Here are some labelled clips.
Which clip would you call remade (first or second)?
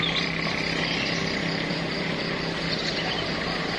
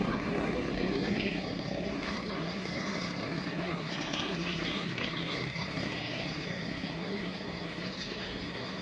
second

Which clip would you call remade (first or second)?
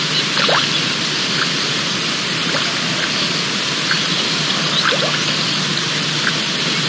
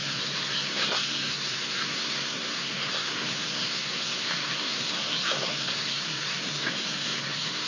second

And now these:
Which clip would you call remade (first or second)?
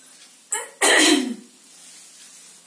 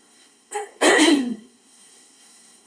second